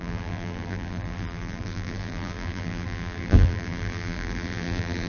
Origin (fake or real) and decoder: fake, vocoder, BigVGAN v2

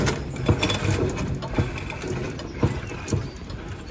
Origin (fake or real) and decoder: real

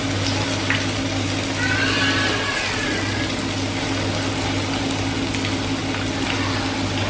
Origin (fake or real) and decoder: real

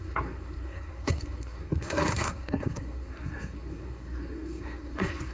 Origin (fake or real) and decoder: fake, codec, SNAC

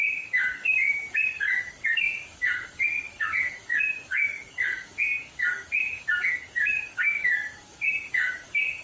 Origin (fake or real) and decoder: fake, codec, DAC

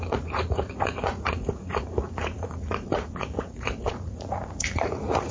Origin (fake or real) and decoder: fake, vocoder, Vocos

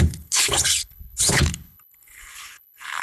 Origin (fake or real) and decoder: fake, codec, HILCodec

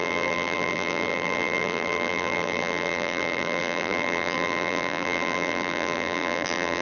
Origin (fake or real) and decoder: fake, vocoder, BigVGAN v2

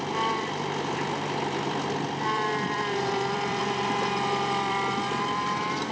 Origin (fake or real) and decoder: fake, vocoder, BigVGAN v2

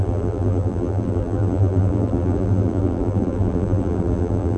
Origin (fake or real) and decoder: fake, vocoder, BigVGAN v2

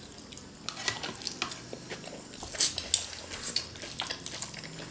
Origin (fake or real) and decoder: real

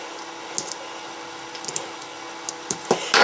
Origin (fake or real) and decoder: real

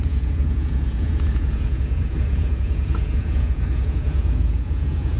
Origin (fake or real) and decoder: fake, vocoder, Vocos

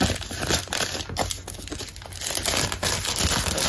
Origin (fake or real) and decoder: real